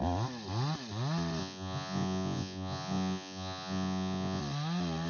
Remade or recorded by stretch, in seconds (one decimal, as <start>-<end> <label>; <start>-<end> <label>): 0.0-1.4 recorded; 1.4-4.4 remade; 4.4-5.1 recorded